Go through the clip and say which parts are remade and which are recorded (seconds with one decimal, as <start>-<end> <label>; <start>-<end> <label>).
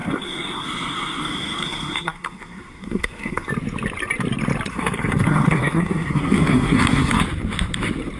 0.0-3.5 remade; 3.5-4.7 recorded; 4.7-7.2 remade; 7.2-8.2 recorded